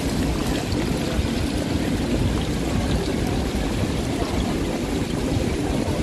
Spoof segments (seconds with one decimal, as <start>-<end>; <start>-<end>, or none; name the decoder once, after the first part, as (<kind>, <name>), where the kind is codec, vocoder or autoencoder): none